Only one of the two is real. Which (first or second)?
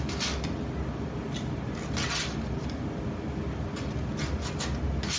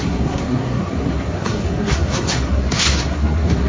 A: first